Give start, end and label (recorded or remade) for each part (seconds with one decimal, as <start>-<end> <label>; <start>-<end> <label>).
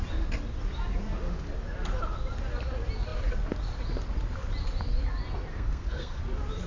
0.0-5.5 recorded; 5.5-6.2 remade; 6.2-6.7 recorded